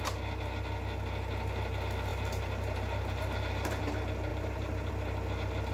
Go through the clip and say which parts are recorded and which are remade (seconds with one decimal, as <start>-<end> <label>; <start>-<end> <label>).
0.0-2.1 recorded; 2.1-3.8 remade; 3.8-4.3 recorded; 4.3-4.9 remade; 4.9-5.7 recorded